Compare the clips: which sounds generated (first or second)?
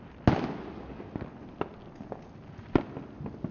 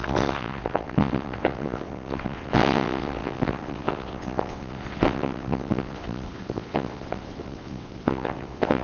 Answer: second